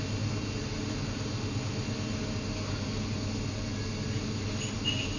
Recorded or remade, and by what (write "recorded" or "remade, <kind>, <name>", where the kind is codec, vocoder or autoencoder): recorded